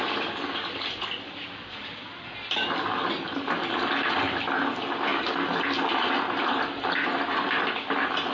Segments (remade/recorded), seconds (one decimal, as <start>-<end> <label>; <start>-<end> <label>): 0.0-8.3 recorded